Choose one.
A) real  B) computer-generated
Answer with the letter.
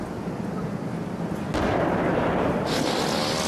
A